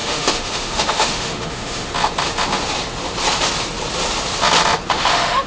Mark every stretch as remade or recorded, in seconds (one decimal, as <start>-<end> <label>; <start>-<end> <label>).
0.0-1.9 remade; 1.9-4.9 recorded; 4.9-5.5 remade

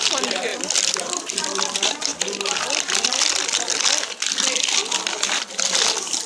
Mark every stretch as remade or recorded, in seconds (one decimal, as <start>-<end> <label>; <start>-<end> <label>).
0.0-2.1 remade; 2.1-3.9 recorded; 3.9-4.8 remade; 4.8-6.3 recorded

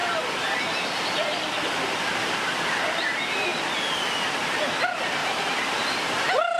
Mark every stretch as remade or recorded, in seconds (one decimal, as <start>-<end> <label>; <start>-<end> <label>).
0.0-5.2 recorded; 5.2-6.6 remade

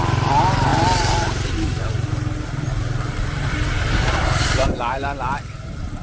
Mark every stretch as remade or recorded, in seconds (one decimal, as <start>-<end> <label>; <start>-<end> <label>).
0.0-6.0 recorded

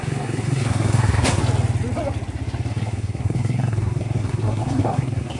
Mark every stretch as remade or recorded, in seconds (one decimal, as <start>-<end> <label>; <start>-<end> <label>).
0.0-1.4 remade; 1.4-2.7 recorded; 2.7-5.4 remade

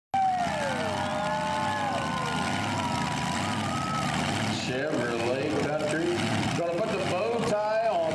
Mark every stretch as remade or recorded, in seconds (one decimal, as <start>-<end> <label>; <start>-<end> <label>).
0.0-6.3 recorded; 6.3-6.9 remade; 6.9-8.1 recorded